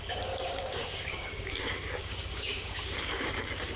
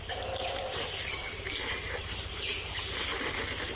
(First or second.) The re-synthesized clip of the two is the first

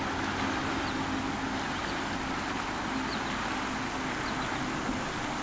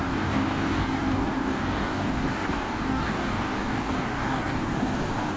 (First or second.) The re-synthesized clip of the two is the second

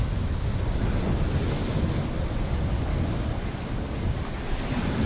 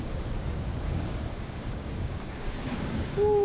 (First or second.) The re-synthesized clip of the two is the second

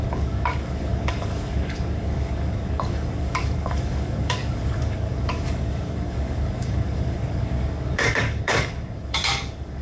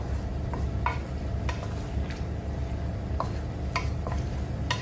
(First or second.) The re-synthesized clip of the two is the first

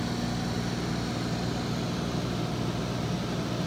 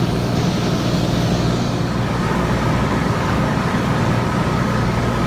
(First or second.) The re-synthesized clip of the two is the second